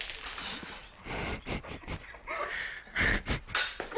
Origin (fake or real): real